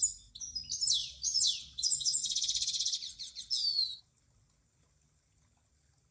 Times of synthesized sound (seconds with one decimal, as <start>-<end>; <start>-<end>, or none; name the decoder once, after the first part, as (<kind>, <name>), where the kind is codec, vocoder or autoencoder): 1.0-3.4 (vocoder, Vocos)